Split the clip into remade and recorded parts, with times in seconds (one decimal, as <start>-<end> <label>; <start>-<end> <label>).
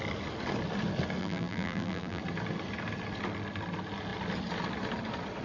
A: 0.0-1.2 recorded; 1.2-2.2 remade; 2.2-5.4 recorded